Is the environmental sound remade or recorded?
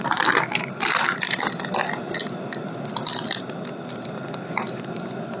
recorded